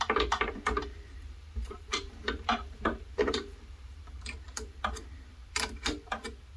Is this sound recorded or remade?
remade